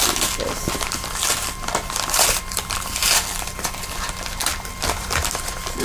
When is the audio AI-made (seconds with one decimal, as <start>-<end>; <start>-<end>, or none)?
none